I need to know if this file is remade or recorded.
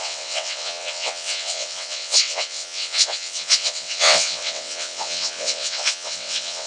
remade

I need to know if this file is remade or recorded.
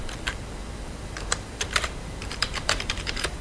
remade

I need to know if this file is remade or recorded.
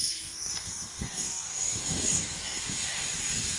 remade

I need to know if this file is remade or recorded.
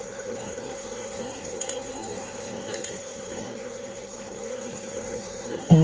remade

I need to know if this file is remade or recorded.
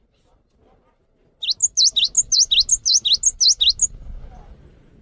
recorded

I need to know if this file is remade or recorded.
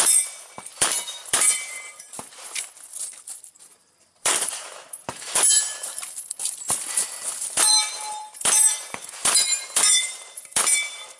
remade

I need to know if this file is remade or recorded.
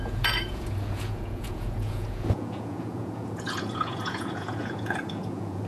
remade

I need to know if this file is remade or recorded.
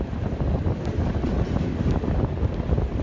recorded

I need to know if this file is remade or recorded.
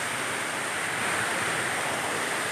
recorded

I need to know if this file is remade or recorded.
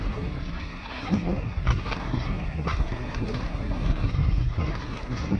remade